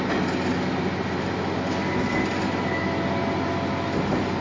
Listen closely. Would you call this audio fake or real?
real